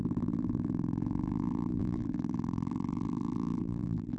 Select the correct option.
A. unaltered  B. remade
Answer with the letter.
B